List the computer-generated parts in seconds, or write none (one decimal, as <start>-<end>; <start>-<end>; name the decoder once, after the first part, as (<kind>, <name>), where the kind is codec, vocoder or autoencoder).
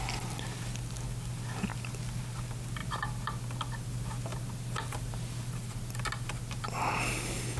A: 1.7-2.2 (vocoder, BigVGAN v2); 2.8-3.4; 4.3-6.0